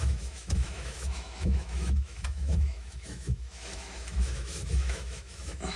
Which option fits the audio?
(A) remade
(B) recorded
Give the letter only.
A